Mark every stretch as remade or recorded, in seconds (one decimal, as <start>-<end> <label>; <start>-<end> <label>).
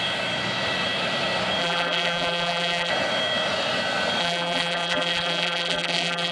0.0-1.6 recorded; 1.6-2.9 remade; 2.9-4.2 recorded; 4.2-6.3 remade